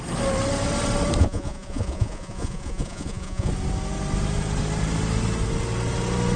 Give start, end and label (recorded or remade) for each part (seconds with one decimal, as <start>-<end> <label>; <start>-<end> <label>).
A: 0.0-1.2 recorded; 1.2-3.5 remade; 3.5-6.4 recorded